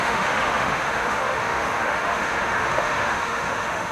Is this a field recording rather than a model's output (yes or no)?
no